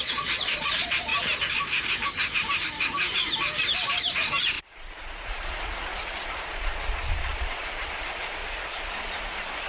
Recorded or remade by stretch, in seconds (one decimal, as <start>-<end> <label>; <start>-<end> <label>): 0.0-1.1 remade; 1.1-4.4 recorded; 4.4-9.7 remade